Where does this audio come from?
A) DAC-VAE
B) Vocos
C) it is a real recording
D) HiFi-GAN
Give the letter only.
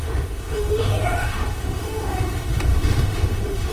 A